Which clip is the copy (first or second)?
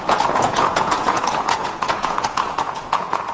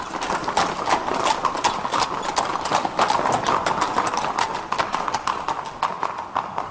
first